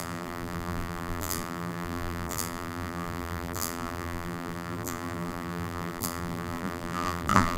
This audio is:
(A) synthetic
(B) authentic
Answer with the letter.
A